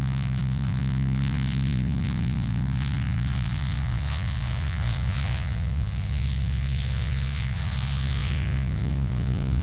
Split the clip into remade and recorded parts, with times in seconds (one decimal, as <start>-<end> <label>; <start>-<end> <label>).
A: 0.0-9.6 remade